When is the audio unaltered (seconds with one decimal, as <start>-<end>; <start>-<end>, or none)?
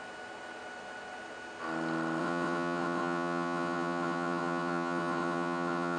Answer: 0.0-2.2